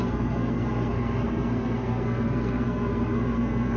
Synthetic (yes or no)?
yes